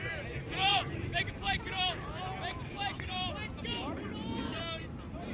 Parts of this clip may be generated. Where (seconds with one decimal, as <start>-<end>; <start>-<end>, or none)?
0.7-2.2; 2.6-5.3